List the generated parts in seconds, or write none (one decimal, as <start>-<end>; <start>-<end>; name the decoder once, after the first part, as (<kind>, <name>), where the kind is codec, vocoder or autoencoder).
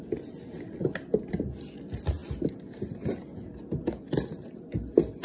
none